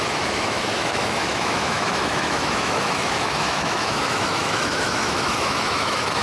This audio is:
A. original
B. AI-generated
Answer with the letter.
B